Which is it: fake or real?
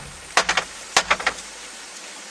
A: real